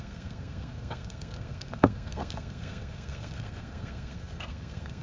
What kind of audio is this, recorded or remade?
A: remade